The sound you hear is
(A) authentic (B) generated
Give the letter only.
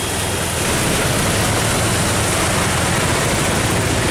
A